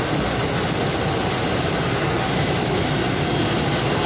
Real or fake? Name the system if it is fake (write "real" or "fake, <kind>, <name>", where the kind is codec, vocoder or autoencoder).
real